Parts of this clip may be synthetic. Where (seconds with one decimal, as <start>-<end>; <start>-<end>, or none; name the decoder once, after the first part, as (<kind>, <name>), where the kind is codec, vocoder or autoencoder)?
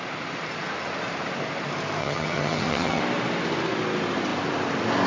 2.0-3.0 (vocoder, HiFi-GAN)